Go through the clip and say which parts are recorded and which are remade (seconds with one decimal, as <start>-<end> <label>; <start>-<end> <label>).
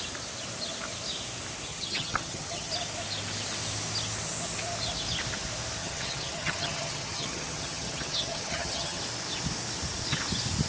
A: 0.0-1.7 recorded; 1.7-2.7 remade; 2.7-5.8 recorded; 5.8-9.0 remade; 9.0-10.7 recorded